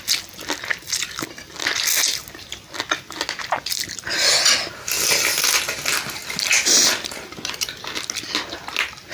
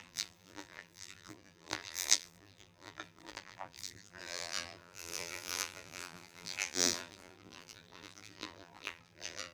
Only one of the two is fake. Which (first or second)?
second